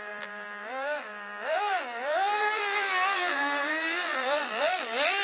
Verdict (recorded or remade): remade